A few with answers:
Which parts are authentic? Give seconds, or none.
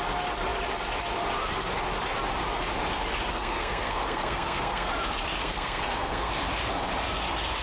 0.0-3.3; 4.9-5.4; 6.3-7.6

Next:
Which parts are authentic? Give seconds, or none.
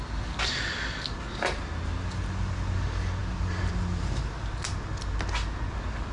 0.0-6.1